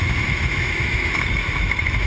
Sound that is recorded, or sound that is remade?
remade